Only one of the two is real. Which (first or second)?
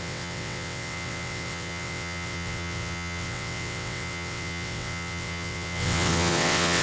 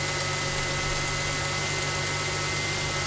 second